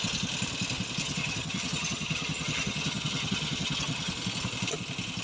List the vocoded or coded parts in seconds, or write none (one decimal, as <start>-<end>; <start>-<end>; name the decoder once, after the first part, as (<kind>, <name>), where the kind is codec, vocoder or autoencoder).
1.0-4.1 (vocoder, HiFi-GAN)